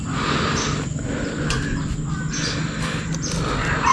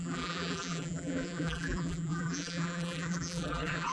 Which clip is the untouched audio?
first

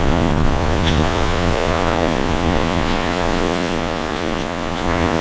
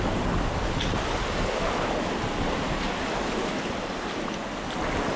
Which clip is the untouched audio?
second